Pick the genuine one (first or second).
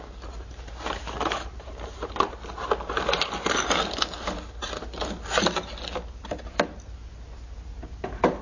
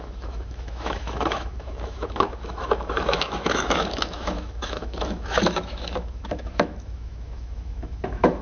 first